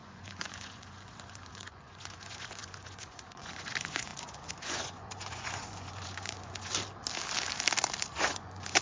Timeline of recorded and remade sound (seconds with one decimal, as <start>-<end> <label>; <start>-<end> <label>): 0.0-6.7 remade; 6.7-8.1 recorded; 8.1-8.8 remade